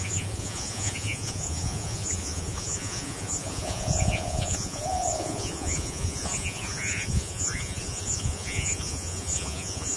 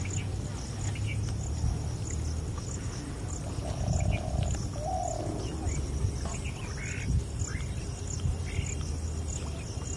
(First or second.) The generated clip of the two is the first